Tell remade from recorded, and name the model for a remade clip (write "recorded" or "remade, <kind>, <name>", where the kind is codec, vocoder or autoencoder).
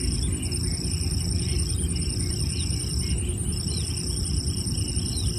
remade, vocoder, BigVGAN v2